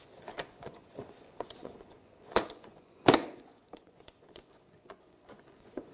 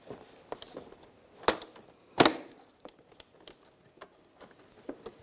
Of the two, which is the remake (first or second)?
first